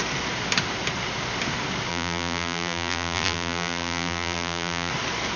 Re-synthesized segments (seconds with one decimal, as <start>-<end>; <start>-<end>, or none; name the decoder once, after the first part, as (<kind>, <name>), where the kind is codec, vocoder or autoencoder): 1.9-4.9 (vocoder, BigVGAN v2)